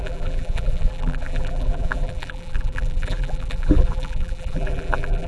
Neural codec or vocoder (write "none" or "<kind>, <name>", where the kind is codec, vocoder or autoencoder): vocoder, BigVGAN v2